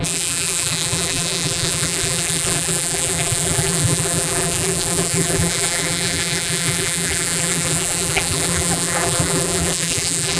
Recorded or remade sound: remade